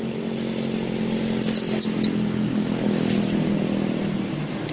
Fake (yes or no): no